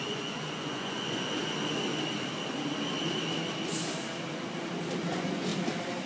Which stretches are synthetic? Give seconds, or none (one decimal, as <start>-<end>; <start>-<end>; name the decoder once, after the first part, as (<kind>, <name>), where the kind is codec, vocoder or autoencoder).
0.0-1.4 (vocoder, Vocos); 5.1-5.5